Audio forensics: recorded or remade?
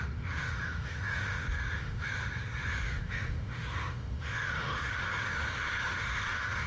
remade